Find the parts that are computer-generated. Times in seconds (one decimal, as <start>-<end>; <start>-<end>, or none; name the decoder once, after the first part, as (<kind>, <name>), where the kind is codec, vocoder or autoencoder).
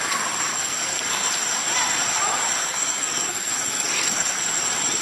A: 0.5-1.3 (codec, SNAC); 2.5-4.4